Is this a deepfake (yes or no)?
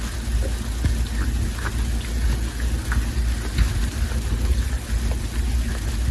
no